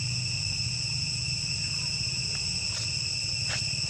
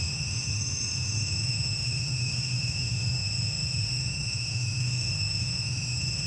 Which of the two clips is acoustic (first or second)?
first